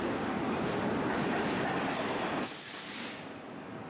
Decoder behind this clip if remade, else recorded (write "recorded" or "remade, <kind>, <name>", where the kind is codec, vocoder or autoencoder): recorded